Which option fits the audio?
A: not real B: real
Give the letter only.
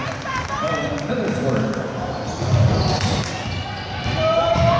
B